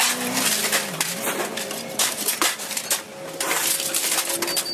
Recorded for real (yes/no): yes